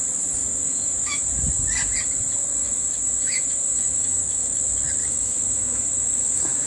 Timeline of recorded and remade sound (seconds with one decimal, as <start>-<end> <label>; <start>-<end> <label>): 0.0-0.4 recorded; 0.4-1.2 remade; 1.2-2.6 recorded; 2.6-4.6 remade; 4.6-5.0 recorded; 5.0-6.7 remade